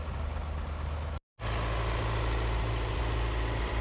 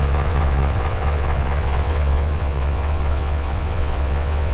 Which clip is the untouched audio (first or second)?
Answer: first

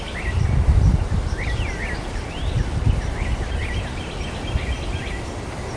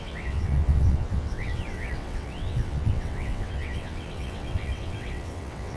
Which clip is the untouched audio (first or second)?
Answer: first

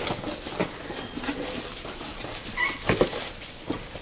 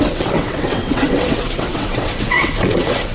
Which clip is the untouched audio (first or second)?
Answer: first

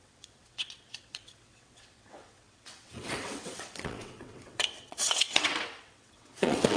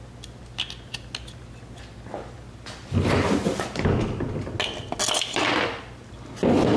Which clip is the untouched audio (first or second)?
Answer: second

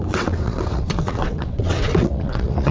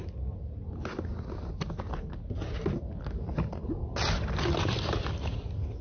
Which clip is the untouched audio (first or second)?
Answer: second